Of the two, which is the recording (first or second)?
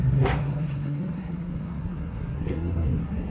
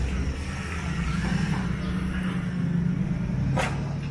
second